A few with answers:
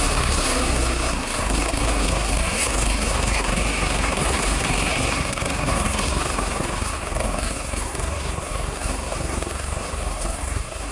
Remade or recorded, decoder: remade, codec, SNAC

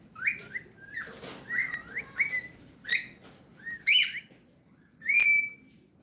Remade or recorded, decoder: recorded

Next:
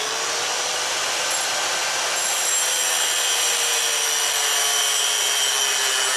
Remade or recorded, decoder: recorded